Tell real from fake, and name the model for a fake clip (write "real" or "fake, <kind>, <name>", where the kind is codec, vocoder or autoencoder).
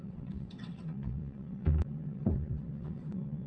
fake, vocoder, WaveNeXt